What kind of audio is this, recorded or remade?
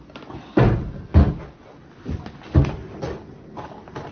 recorded